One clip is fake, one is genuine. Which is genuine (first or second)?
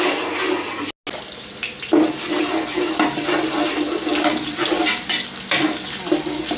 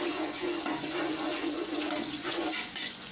first